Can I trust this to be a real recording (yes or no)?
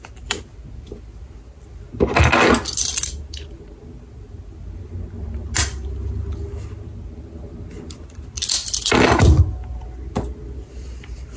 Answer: yes